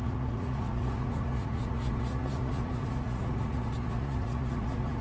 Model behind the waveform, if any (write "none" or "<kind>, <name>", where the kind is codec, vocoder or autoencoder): vocoder, Vocos